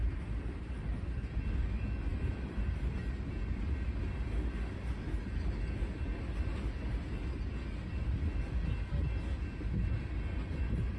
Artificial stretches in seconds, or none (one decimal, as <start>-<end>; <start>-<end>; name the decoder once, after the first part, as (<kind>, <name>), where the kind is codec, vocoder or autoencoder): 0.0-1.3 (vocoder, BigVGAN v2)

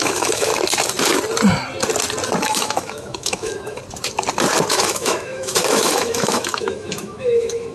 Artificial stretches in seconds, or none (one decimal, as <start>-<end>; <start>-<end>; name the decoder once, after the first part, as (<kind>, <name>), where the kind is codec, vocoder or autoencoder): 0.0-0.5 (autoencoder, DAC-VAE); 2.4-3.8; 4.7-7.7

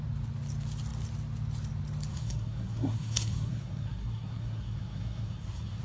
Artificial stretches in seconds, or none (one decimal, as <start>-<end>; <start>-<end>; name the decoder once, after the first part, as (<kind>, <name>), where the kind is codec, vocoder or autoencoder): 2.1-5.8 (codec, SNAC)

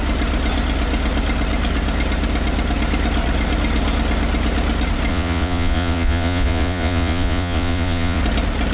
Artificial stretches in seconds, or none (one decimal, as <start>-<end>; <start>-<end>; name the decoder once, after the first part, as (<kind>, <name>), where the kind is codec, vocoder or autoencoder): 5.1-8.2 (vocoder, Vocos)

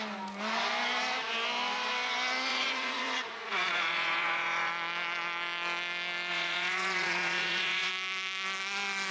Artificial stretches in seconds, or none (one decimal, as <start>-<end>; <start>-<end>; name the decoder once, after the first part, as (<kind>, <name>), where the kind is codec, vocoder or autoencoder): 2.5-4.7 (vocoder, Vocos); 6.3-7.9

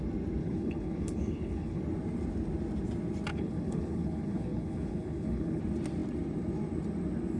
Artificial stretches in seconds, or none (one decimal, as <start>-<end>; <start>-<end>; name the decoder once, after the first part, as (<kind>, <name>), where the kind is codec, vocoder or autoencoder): 0.4-1.8 (codec, HILCodec); 3.3-5.6

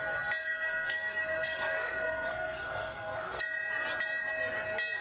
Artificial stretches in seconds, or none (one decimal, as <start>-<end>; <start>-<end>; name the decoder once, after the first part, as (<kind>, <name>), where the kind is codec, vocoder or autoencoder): 0.4-3.4 (codec, SNAC)